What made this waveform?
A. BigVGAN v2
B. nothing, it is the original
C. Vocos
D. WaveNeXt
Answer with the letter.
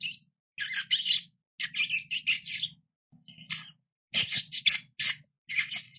B